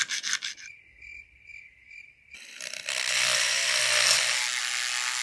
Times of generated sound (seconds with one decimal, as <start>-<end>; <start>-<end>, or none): none